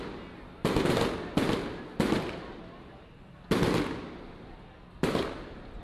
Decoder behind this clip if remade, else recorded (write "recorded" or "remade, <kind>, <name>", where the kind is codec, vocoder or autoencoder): recorded